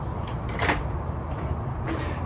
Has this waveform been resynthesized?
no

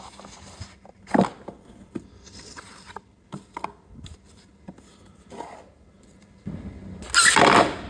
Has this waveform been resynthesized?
no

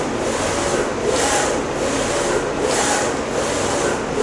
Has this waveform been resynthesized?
no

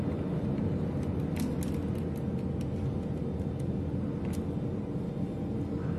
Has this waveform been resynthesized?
no